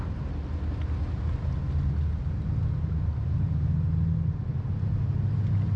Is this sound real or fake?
real